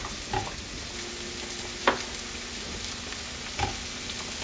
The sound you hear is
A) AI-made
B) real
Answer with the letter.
B